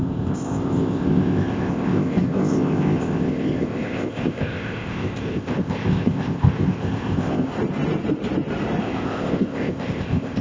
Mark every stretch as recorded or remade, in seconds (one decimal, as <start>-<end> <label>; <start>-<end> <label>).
0.0-7.5 remade; 7.5-8.8 recorded; 8.8-10.4 remade